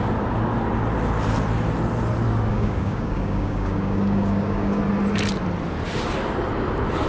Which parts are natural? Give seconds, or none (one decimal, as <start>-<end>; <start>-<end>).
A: 0.0-2.5; 4.8-7.1